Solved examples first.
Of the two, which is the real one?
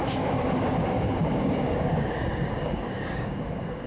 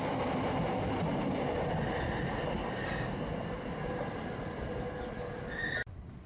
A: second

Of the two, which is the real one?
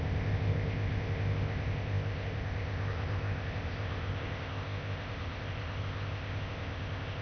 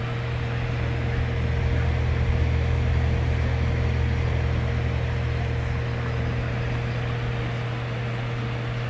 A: second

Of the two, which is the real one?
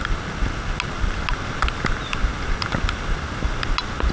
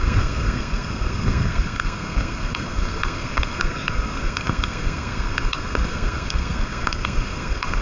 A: first